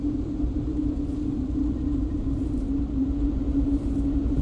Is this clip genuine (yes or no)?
no